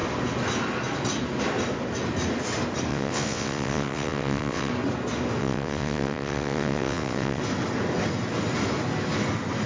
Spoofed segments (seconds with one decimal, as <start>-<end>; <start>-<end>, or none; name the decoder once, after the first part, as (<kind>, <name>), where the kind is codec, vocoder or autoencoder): 2.9-4.7 (vocoder, WaveNeXt); 5.4-7.4